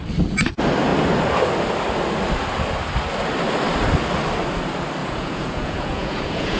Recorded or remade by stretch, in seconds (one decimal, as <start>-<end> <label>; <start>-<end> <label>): 0.0-5.0 recorded; 5.0-6.6 remade